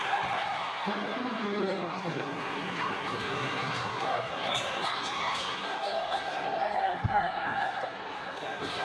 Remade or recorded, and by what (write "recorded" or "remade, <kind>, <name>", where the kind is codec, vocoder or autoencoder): remade, codec, SNAC